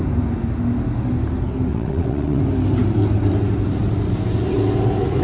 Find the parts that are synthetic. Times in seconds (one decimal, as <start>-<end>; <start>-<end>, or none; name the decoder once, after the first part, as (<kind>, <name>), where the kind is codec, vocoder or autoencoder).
1.7-2.4 (vocoder, WaveNeXt)